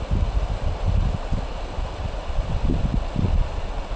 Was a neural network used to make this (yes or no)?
no